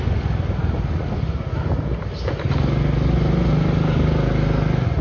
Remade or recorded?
recorded